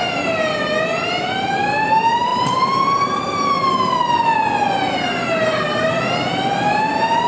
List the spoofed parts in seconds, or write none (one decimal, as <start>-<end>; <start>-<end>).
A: 2.3-3.2; 5.5-6.1